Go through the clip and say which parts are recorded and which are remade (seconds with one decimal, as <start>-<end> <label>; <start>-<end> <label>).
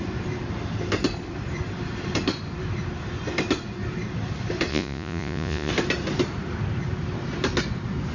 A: 0.0-4.7 recorded; 4.7-5.7 remade; 5.7-8.1 recorded